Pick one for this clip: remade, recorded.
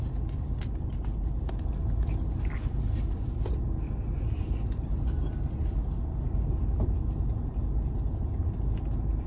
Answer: recorded